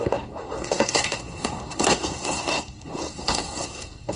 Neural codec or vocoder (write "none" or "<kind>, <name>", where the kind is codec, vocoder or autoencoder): codec, SNAC